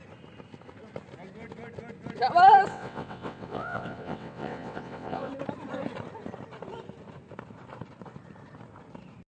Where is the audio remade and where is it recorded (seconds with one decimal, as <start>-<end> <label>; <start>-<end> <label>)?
0.0-2.7 recorded; 2.7-5.3 remade; 5.3-9.3 recorded